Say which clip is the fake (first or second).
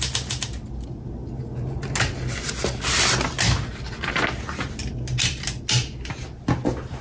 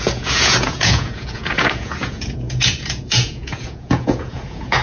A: second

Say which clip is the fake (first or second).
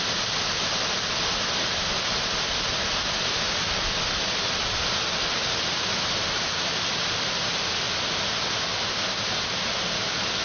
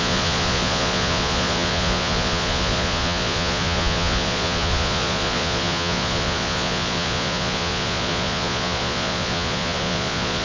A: second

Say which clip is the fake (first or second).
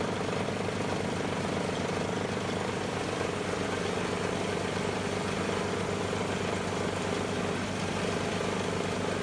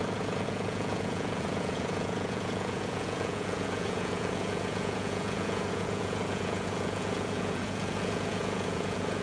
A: second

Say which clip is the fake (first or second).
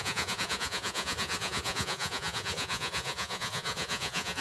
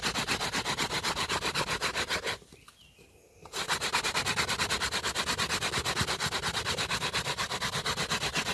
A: first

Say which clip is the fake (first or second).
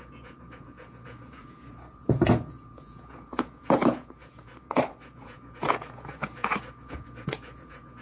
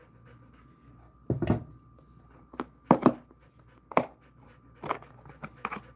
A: first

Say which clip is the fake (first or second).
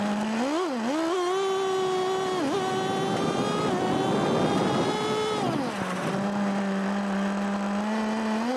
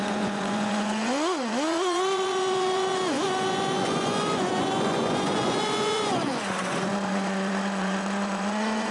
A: second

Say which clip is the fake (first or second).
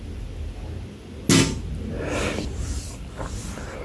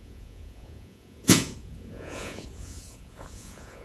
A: second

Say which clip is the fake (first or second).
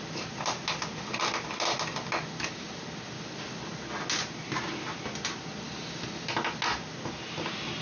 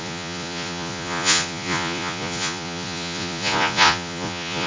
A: second